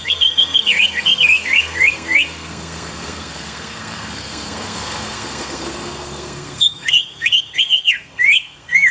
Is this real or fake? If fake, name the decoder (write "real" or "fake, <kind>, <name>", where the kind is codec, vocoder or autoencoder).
fake, codec, SNAC